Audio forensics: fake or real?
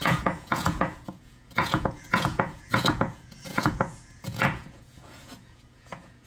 fake